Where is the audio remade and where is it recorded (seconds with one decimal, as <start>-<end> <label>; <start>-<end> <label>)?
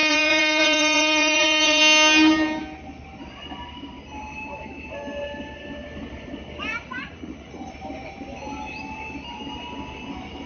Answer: 0.0-1.8 remade; 1.8-6.7 recorded; 6.7-7.7 remade; 7.7-10.5 recorded